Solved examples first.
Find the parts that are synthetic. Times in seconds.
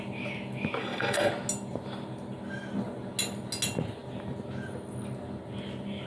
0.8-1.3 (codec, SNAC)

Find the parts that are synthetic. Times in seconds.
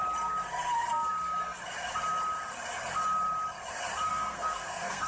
4.1-5.1 (codec, SNAC)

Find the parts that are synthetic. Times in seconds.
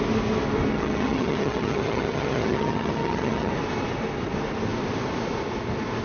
0.7-3.5 (vocoder, HiFi-GAN)